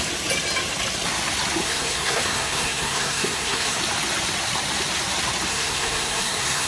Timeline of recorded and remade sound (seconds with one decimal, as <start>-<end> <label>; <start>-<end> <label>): 0.0-1.6 recorded; 1.6-3.8 remade; 3.8-5.5 recorded; 5.5-6.7 remade